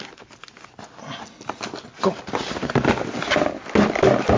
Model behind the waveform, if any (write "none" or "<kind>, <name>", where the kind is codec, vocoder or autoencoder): none